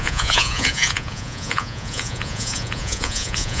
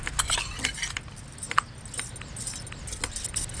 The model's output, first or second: first